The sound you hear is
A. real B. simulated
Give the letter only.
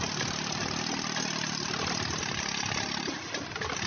A